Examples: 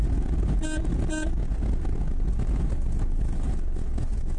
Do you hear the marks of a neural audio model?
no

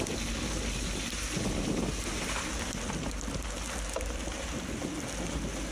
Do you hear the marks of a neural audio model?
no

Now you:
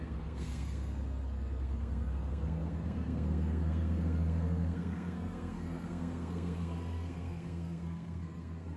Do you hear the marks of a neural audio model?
yes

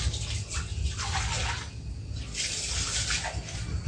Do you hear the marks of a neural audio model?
no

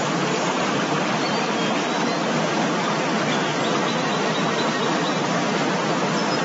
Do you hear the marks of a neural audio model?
no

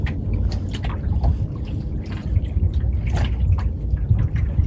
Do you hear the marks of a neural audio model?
no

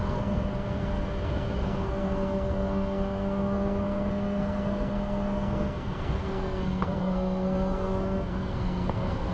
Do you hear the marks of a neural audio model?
yes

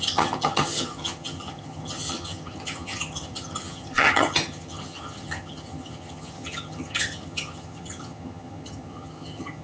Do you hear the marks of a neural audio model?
yes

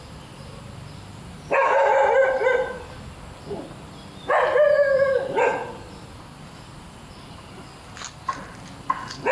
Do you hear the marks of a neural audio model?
no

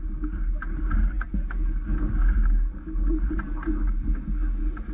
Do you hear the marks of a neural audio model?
no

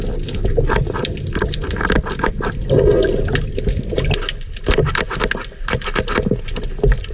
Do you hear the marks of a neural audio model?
no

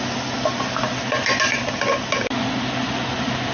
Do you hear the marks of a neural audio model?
no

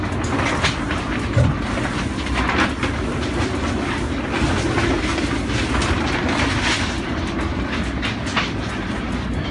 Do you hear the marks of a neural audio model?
no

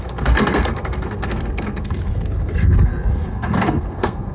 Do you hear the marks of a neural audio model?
yes